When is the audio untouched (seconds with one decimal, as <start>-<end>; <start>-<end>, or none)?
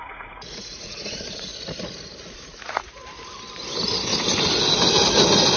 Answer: 1.5-2.2; 3.0-5.6